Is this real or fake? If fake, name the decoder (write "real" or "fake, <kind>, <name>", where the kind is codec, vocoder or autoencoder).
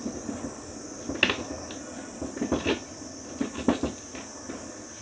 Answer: real